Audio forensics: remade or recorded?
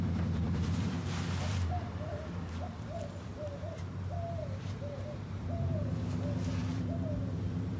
remade